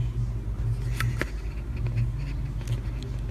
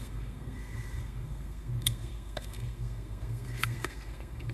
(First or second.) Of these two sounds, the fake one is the second